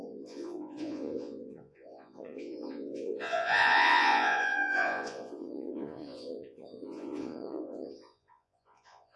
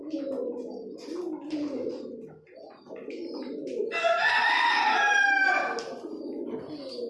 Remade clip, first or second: first